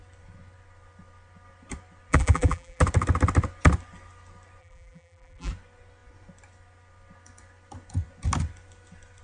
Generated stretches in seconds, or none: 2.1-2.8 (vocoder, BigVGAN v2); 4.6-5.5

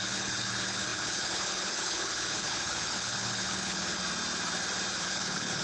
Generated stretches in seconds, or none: 0.0-4.0 (codec, HILCodec); 5.0-5.6

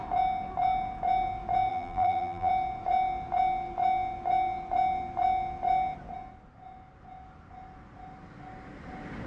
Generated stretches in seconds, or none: 1.7-2.5 (vocoder, BigVGAN v2)

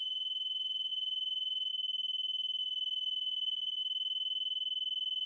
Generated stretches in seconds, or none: 2.6-3.8 (vocoder, BigVGAN v2)

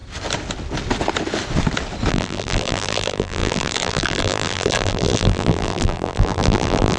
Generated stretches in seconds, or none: 2.1-7.0 (vocoder, BigVGAN v2)

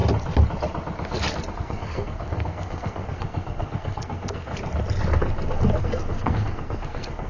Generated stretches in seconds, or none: 1.5-4.5 (codec, SNAC); 5.8-7.3

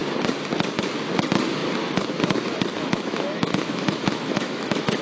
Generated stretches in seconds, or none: 2.7-5.0 (autoencoder, DAC-VAE)

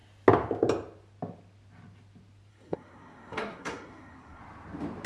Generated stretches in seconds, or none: 2.5-4.4 (codec, SNAC)